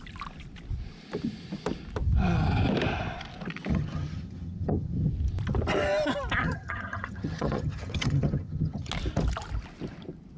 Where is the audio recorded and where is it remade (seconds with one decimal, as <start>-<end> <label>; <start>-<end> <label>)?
0.0-3.7 recorded; 3.7-5.1 remade; 5.1-6.4 recorded; 6.4-8.9 remade; 8.9-10.4 recorded